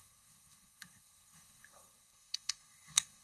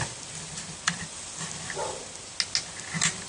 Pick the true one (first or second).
second